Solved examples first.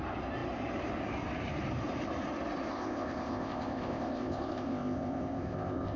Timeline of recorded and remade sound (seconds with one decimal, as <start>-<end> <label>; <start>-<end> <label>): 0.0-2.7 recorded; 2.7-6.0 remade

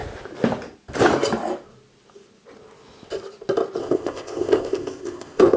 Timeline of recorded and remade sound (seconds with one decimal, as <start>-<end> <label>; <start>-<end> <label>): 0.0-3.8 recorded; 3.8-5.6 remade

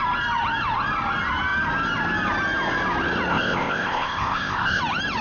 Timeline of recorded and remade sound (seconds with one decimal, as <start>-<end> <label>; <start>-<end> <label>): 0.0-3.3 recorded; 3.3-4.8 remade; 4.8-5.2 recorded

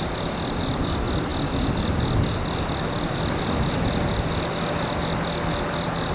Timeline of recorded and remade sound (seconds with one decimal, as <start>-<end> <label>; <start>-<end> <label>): 0.0-6.1 recorded

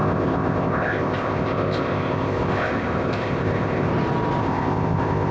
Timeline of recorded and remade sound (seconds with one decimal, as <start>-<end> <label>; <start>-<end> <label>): 0.0-3.9 remade; 3.9-4.4 recorded; 4.4-5.3 remade

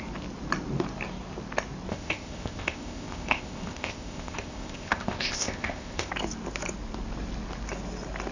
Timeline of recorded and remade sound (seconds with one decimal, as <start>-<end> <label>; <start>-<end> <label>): 0.0-1.9 recorded; 1.9-6.1 remade; 6.1-8.3 recorded

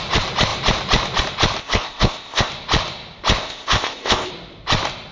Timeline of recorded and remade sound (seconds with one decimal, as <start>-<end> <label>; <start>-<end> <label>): 0.0-1.6 recorded; 1.6-2.5 remade; 2.5-3.4 recorded; 3.4-4.3 remade; 4.3-5.1 recorded